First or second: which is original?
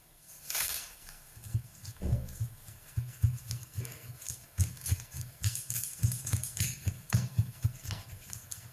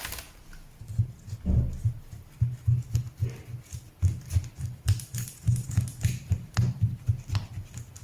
second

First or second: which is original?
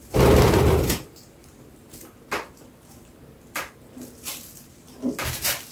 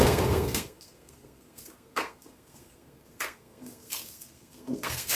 first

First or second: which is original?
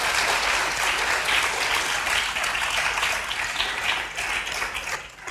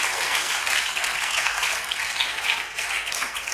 first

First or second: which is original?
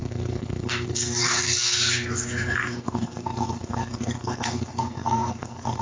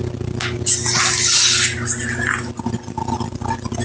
second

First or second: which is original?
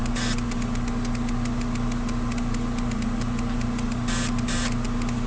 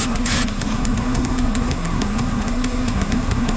first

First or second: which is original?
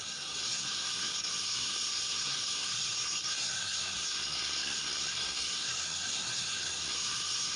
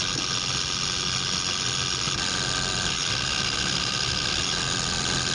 second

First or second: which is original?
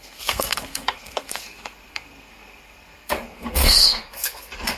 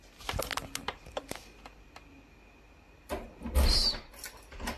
second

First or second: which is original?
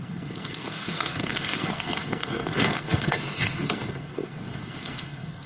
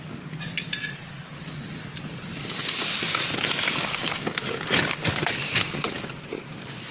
second